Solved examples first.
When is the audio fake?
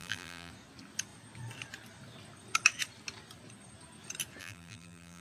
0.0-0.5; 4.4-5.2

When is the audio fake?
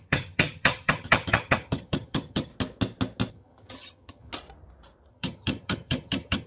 0.0-2.5; 3.3-4.3; 5.1-6.5